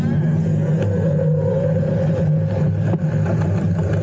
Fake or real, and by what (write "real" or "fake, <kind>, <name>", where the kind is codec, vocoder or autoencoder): real